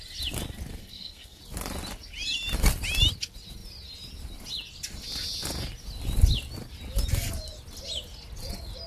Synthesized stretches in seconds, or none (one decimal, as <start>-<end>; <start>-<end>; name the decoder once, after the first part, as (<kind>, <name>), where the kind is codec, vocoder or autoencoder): 0.8-1.4 (codec, SNAC)